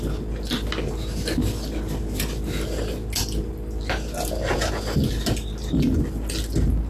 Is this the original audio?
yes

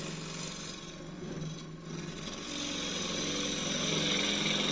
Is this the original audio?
yes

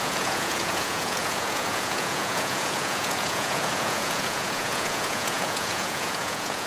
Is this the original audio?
no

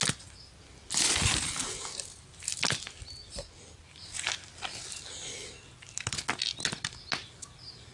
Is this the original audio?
yes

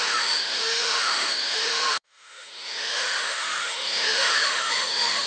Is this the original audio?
no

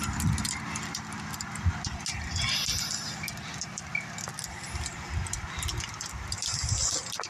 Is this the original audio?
yes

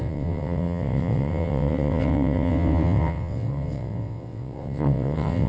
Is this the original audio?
no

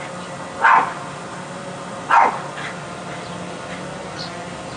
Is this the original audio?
yes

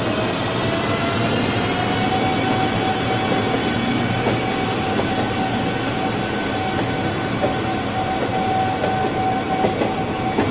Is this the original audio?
yes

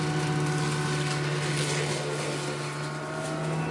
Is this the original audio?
yes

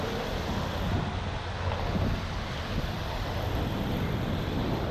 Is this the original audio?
yes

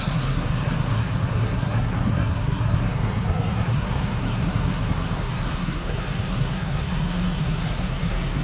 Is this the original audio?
no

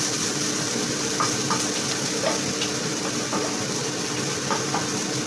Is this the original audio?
yes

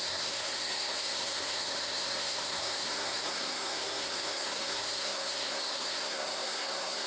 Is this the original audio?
no